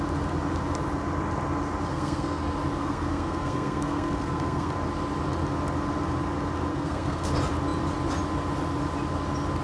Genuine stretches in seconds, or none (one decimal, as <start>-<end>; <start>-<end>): 0.0-1.9; 2.4-2.8; 4.7-6.7; 7.3-9.6